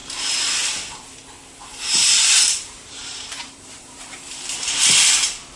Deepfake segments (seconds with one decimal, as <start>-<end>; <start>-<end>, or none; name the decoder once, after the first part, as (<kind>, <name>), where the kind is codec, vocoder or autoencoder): 1.7-4.8 (vocoder, BigVGAN v2)